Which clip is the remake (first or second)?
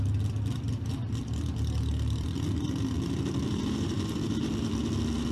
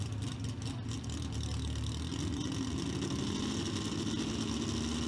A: first